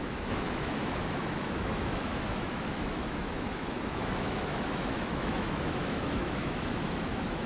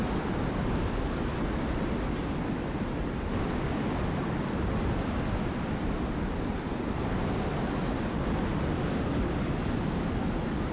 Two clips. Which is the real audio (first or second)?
second